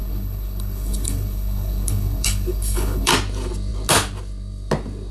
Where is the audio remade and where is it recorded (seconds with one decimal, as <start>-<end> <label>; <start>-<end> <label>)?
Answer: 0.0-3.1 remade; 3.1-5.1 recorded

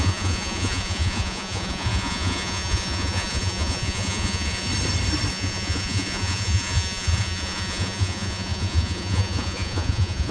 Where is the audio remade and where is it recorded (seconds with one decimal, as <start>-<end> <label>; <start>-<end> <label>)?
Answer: 0.0-4.7 remade; 4.7-5.3 recorded; 5.3-10.3 remade

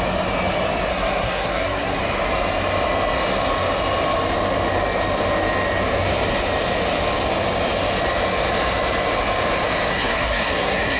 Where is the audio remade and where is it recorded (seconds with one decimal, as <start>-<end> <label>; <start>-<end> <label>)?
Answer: 0.0-0.9 recorded; 0.9-2.0 remade; 2.0-9.9 recorded; 9.9-11.0 remade

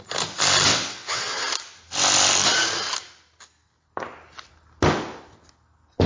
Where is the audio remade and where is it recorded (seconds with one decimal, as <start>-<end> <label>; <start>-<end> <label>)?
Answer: 0.0-0.7 recorded; 0.7-1.4 remade; 1.4-6.1 recorded

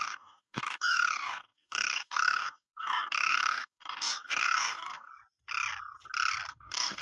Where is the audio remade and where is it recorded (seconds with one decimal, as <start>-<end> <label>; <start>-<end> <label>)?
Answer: 0.0-5.1 remade; 5.1-6.5 recorded; 6.5-7.0 remade

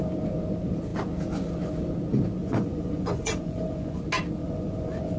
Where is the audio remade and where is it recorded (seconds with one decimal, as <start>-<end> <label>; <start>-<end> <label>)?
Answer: 0.0-2.4 recorded; 2.4-4.0 remade; 4.0-4.4 recorded; 4.4-5.2 remade

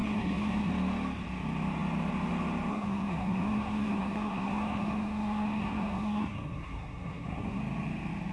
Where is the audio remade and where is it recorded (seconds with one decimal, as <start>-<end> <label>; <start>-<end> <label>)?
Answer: 0.0-0.7 remade; 0.7-2.7 recorded; 2.7-7.6 remade; 7.6-8.3 recorded

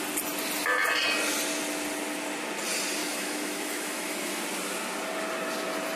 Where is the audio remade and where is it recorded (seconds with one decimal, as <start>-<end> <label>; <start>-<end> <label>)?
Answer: 0.0-3.0 recorded; 3.0-4.4 remade; 4.4-6.0 recorded